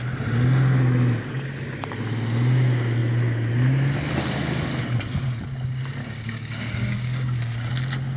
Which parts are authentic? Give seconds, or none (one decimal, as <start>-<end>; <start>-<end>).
0.0-6.0; 7.7-8.2